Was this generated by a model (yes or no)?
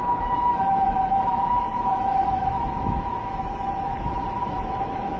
yes